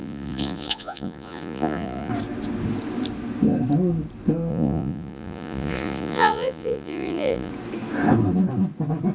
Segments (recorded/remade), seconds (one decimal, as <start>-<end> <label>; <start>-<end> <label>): 0.0-2.1 remade; 2.1-4.5 recorded; 4.5-7.5 remade; 7.5-9.1 recorded